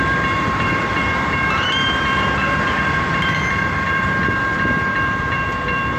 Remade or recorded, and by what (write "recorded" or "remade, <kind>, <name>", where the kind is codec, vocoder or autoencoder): remade, vocoder, BigVGAN v2